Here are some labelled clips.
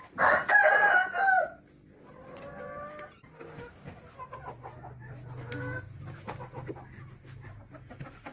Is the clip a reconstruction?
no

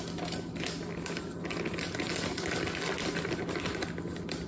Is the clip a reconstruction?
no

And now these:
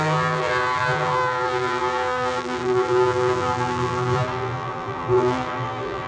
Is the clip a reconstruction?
yes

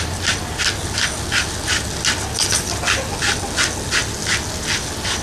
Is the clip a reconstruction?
no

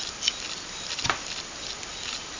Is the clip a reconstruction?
no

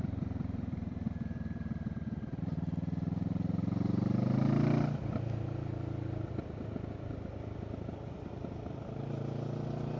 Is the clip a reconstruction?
no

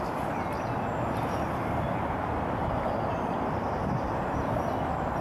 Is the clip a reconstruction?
no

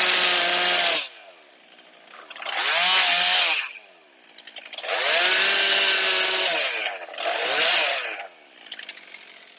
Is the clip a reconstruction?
no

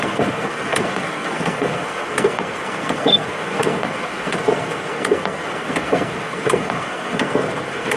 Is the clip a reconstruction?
yes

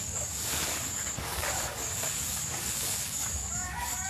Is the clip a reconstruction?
yes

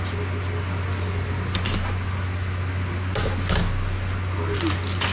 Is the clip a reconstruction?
no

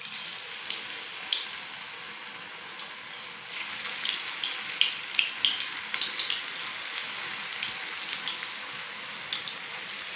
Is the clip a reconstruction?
no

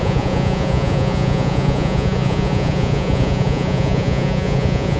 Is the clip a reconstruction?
yes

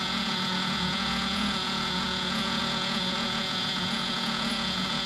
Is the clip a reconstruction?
yes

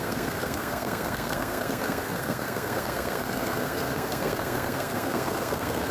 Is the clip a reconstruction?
yes